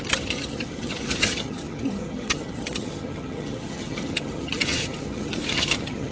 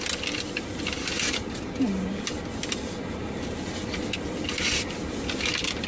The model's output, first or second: first